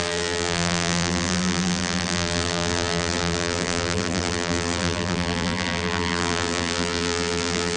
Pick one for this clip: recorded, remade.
remade